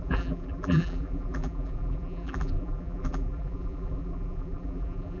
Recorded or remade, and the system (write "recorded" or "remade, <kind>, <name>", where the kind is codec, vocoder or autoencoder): remade, vocoder, BigVGAN v2